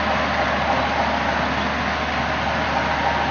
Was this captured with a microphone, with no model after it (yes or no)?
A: yes